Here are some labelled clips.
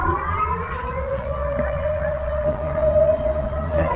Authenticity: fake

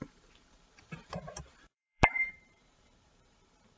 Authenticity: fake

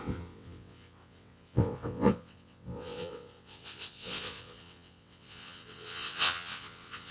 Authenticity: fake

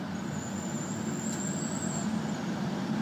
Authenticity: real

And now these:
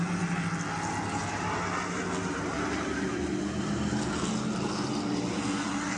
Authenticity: real